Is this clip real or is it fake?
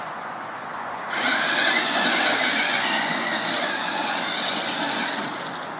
fake